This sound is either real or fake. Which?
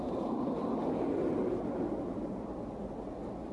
real